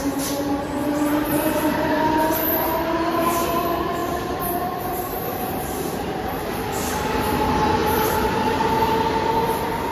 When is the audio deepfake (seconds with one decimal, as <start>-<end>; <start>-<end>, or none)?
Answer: 0.8-2.5; 4.0-6.4; 7.8-8.3